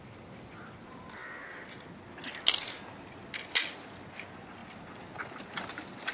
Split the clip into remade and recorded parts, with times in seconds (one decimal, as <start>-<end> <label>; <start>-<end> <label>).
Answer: 0.0-6.1 recorded